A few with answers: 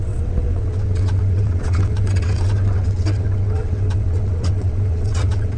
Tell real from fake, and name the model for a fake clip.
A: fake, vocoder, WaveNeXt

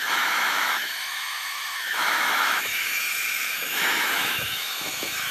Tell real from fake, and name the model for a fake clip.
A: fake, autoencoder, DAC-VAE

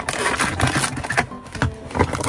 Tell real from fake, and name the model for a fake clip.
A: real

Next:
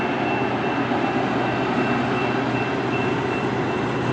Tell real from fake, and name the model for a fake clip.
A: real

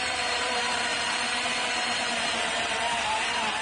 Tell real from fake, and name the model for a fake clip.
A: fake, vocoder, BigVGAN v2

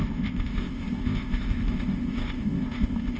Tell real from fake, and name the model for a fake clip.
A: fake, codec, ZipCodec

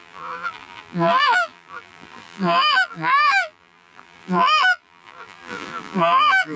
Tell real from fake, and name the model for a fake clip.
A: fake, vocoder, BigVGAN v2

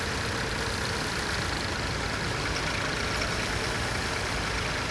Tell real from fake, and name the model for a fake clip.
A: real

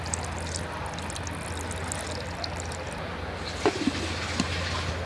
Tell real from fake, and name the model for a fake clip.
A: real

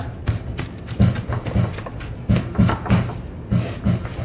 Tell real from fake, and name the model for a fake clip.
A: real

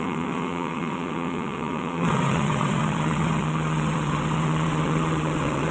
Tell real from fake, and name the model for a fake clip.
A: fake, vocoder, WaveNeXt